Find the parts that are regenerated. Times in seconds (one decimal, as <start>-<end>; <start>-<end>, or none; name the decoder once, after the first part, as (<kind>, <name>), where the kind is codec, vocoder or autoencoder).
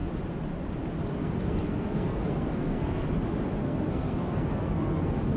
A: 1.2-3.1 (codec, SNAC); 3.6-5.4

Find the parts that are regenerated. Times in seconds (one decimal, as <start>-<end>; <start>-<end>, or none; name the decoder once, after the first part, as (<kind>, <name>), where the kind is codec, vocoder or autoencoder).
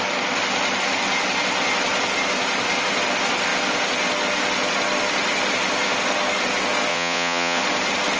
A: 6.9-7.6 (vocoder, Vocos)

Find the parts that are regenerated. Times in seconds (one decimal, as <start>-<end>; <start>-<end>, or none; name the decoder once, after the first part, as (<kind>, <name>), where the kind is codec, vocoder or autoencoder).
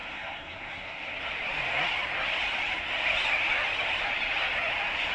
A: 0.0-1.2 (codec, SNAC)